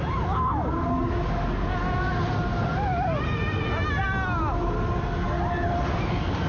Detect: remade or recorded recorded